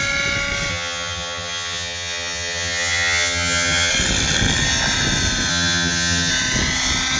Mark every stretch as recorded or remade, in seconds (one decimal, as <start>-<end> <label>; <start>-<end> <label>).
0.0-0.7 recorded; 0.7-3.9 remade; 3.9-5.5 recorded; 5.5-6.3 remade; 6.3-7.2 recorded